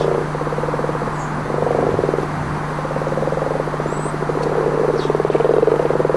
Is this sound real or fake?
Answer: real